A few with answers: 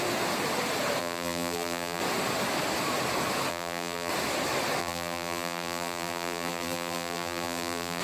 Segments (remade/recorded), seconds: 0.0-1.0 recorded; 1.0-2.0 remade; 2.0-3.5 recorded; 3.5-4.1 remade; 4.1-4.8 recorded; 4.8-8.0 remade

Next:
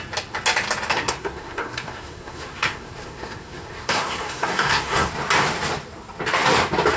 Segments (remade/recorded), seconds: 0.0-0.9 recorded; 0.9-5.1 remade; 5.1-7.0 recorded

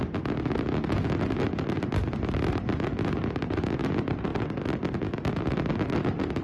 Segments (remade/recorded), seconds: 0.0-6.4 recorded

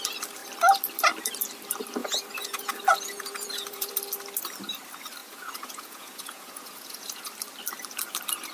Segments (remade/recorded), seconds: 0.0-2.0 recorded; 2.0-3.9 remade; 3.9-5.2 recorded; 5.2-7.3 remade; 7.3-8.5 recorded

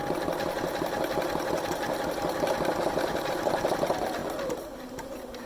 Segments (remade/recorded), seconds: 0.0-5.5 recorded